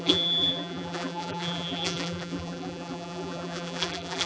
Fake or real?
fake